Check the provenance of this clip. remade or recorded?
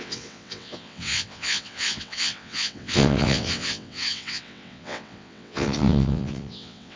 remade